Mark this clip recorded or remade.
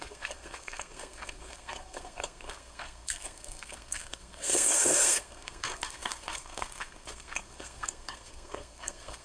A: remade